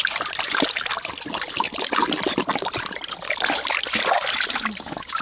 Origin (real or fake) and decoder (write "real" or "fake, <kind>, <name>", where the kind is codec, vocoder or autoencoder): real